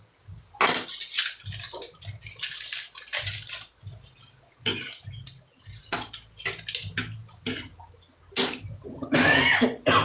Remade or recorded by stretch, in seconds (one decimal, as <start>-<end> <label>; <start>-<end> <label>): 0.0-10.0 recorded